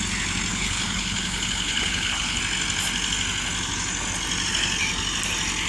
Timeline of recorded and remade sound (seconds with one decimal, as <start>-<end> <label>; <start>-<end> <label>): 0.0-0.5 recorded; 0.5-2.4 remade; 2.4-5.7 recorded